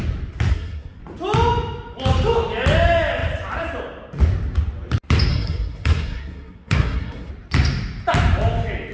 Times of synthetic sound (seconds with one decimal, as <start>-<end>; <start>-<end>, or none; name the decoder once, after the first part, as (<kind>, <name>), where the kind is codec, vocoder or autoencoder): 0.5-1.0 (codec, SNAC); 5.3-7.3